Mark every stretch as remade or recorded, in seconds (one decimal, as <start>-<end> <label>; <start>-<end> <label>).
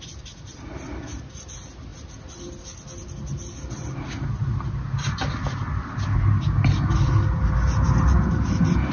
0.0-8.9 recorded